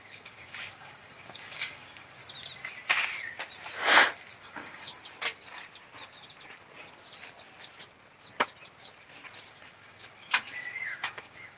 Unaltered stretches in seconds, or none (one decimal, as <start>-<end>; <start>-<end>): 2.2-4.4; 4.9-9.5